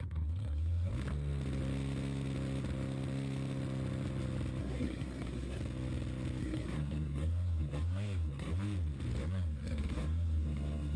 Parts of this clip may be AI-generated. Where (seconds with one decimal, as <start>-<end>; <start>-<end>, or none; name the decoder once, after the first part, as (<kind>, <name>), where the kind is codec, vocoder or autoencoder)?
0.0-0.9 (codec, SNAC); 4.6-5.6; 6.4-8.5; 9.2-11.0